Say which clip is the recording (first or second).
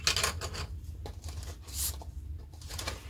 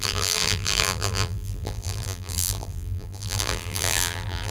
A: first